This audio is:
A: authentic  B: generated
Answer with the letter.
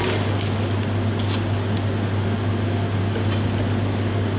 A